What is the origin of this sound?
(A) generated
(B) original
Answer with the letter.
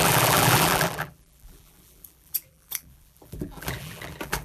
A